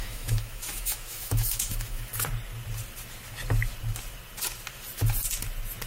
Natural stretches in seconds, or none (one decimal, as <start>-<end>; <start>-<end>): 2.1-5.9